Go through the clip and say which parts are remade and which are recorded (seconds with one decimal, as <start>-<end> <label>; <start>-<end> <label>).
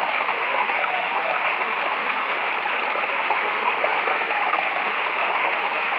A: 0.0-2.5 remade; 2.5-3.0 recorded; 3.0-6.0 remade